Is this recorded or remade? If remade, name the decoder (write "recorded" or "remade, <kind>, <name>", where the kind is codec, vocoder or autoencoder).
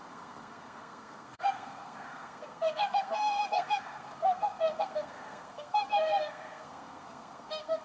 remade, codec, SNAC